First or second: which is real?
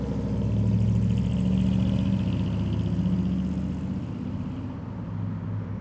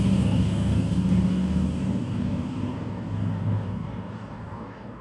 first